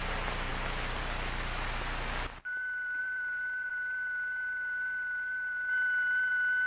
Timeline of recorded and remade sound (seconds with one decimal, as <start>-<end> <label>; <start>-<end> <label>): 0.0-0.5 recorded; 0.5-1.0 remade; 1.0-3.0 recorded; 3.0-3.7 remade; 3.7-6.7 recorded